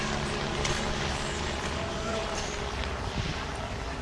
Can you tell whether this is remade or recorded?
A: remade